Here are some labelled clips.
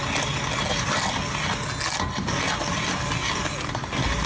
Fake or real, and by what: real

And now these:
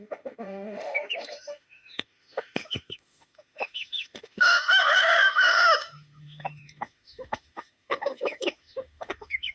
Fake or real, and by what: fake, autoencoder, DAC-VAE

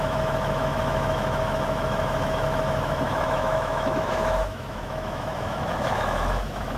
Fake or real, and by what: fake, autoencoder, DAC-VAE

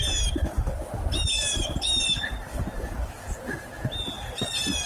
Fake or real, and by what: real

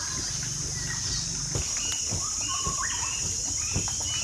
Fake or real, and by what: real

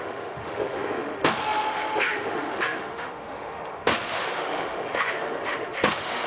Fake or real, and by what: fake, autoencoder, DAC-VAE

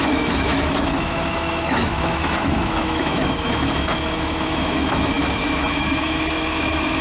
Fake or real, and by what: fake, autoencoder, DAC-VAE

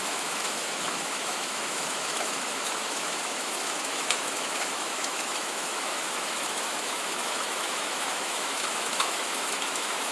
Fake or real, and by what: fake, autoencoder, DAC-VAE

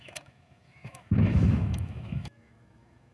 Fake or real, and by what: fake, autoencoder, DAC-VAE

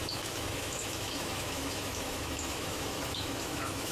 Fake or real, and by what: fake, autoencoder, DAC-VAE